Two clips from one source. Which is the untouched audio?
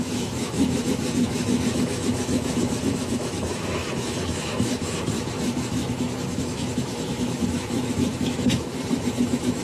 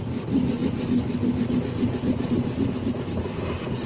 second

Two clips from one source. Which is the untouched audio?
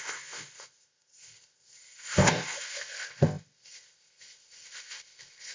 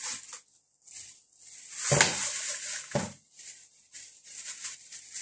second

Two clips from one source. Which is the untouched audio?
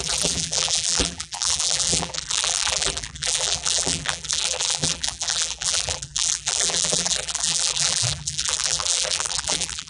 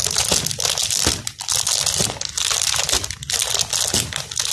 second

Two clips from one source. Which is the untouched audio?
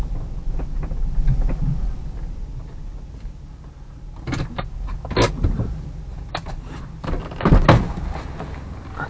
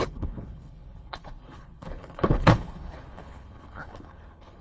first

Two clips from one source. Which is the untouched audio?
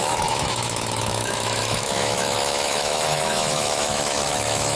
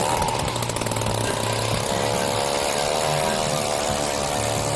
second